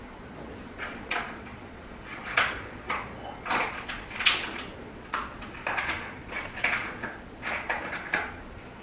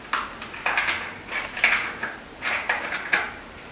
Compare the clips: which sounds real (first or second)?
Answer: second